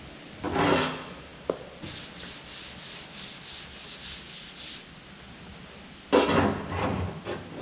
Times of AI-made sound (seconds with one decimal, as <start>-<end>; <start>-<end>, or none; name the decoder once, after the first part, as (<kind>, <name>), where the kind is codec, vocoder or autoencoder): none